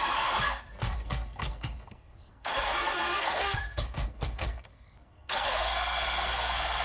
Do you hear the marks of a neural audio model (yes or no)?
yes